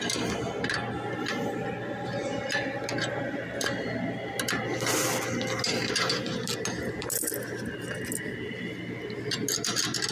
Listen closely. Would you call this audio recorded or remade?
recorded